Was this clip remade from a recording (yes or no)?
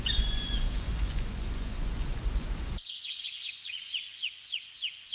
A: yes